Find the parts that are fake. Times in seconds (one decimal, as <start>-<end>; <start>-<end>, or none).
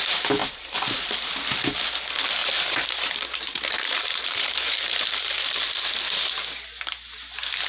0.4-1.3; 2.4-5.7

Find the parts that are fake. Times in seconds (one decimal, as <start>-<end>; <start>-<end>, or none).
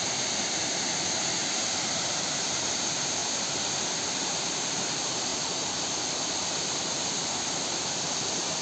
0.0-1.4; 2.0-3.2; 3.8-8.6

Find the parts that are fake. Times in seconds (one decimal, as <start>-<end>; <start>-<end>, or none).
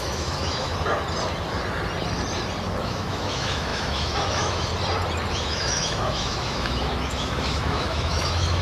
0.0-0.7; 2.8-4.7; 5.3-8.6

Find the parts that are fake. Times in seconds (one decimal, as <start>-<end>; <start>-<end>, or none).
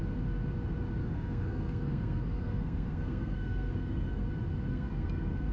1.0-4.3; 4.7-5.5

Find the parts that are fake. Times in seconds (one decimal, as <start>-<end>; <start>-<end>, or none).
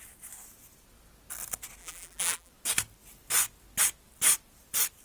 1.8-2.5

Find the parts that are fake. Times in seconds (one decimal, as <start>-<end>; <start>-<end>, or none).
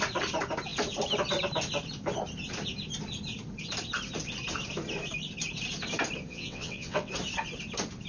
6.3-7.1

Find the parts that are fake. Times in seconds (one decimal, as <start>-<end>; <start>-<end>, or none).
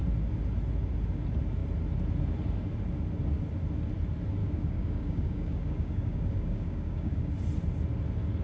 4.4-7.3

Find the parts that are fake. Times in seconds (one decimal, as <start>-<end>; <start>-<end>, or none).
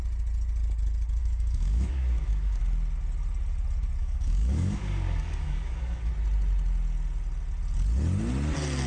1.2-2.6; 4.0-6.1